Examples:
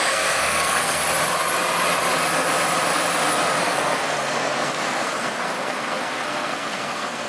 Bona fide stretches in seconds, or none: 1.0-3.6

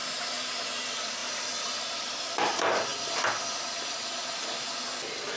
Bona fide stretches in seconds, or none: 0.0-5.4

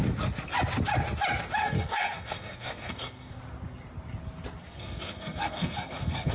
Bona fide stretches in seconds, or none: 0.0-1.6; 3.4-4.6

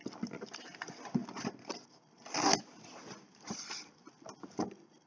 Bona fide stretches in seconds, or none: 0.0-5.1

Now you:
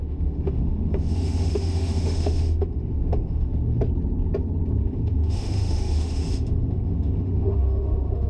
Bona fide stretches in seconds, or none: 3.8-4.8

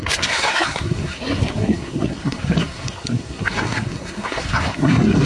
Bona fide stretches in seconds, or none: none

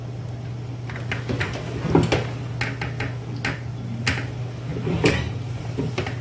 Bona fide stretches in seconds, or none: 0.0-4.7; 5.8-6.2

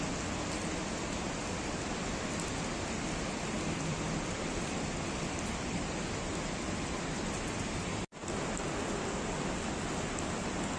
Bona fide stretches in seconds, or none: 0.0-3.9; 8.0-10.8